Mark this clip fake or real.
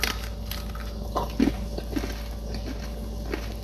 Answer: real